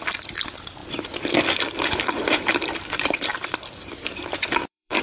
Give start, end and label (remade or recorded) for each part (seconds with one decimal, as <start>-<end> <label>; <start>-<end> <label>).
0.0-0.8 remade; 0.8-1.6 recorded; 1.6-5.0 remade

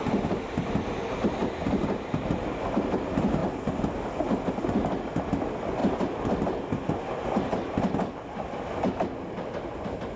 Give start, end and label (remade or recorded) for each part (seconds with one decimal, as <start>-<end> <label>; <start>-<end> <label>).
0.0-1.4 recorded; 1.4-2.4 remade; 2.4-10.2 recorded

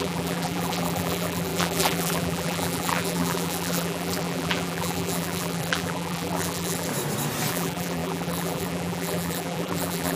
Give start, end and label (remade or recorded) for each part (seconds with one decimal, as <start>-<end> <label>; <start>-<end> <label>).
0.0-6.9 remade; 6.9-7.5 recorded; 7.5-10.2 remade

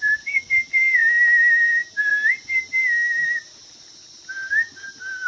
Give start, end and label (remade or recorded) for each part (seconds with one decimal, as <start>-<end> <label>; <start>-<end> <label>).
0.0-1.0 remade; 1.0-1.6 recorded; 1.6-2.1 remade; 2.1-5.3 recorded